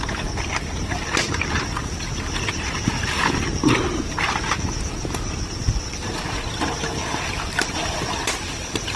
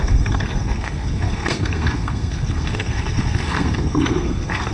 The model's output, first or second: second